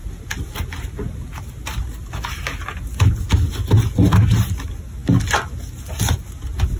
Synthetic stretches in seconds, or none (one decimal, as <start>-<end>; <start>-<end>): none